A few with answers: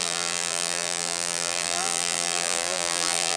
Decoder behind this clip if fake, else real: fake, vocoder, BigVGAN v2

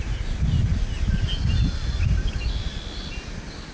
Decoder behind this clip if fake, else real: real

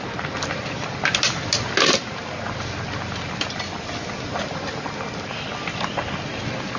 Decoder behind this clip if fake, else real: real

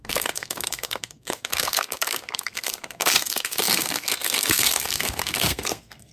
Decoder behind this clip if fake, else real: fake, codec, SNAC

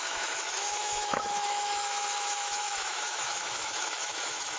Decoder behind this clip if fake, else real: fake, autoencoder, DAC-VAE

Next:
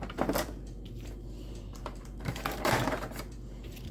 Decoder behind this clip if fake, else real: fake, vocoder, BigVGAN v2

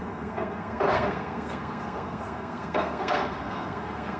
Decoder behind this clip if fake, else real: fake, codec, SNAC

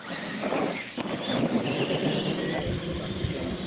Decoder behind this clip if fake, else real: real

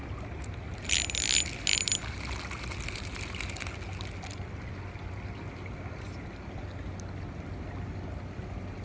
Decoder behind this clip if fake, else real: real